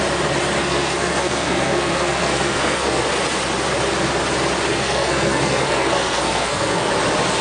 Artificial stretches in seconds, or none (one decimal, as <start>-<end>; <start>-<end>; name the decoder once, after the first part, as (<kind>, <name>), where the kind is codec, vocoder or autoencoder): 0.6-3.0 (codec, SNAC); 4.7-6.9